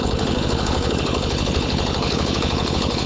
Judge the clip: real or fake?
fake